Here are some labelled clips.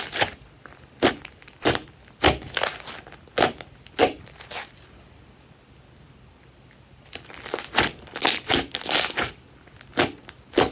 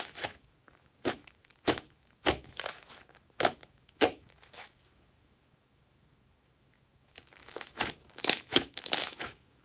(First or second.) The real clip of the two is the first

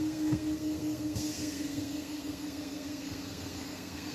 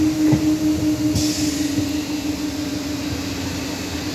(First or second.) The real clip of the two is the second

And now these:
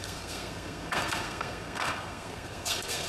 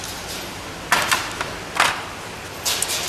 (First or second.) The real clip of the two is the second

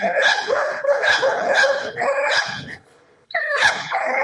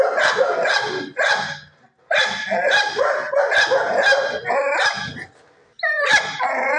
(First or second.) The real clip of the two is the second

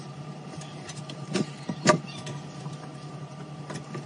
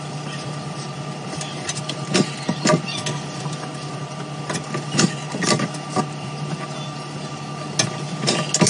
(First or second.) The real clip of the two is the second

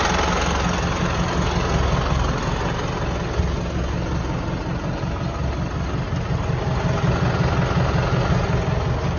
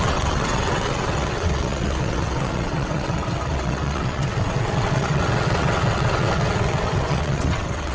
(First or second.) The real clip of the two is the first